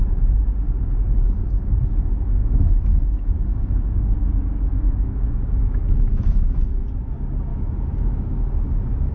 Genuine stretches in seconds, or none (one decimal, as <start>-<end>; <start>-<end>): 0.0-2.4; 3.3-4.7; 6.8-7.5; 8.4-9.1